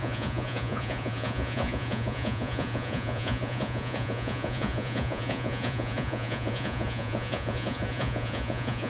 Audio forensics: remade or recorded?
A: remade